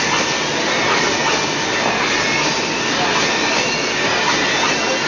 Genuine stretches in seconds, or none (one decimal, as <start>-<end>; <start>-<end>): 0.0-5.1